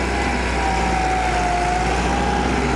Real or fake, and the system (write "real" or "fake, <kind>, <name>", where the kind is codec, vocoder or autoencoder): real